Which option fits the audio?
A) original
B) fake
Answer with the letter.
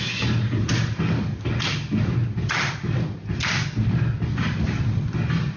A